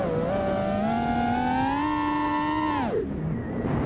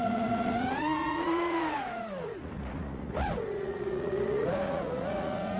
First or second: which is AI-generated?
second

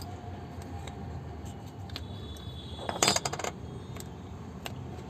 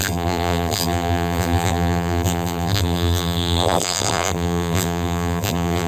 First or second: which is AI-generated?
second